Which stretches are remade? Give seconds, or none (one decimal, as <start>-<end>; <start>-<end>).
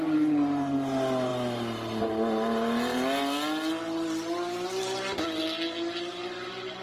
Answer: none